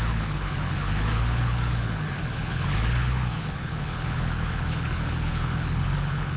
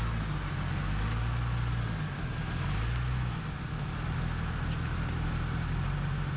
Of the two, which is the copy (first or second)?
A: first